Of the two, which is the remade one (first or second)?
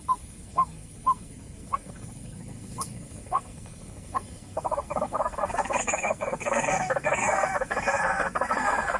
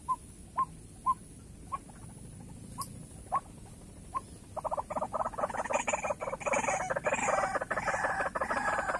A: first